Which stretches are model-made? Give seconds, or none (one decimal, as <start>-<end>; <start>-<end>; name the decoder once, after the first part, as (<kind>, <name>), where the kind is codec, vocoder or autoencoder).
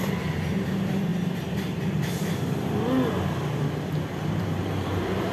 0.0-1.1 (vocoder, BigVGAN v2); 4.3-5.3